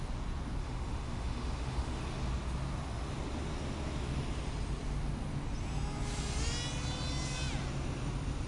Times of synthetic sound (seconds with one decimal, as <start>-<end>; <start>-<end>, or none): 0.6-2.0